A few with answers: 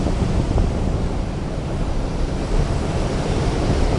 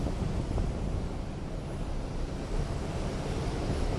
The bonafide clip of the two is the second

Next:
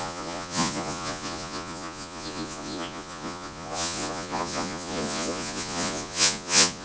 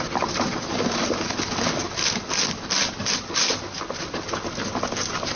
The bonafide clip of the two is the second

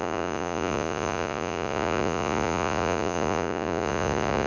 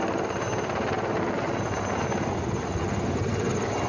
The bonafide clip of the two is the second